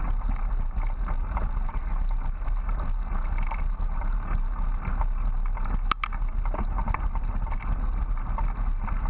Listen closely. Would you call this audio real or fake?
real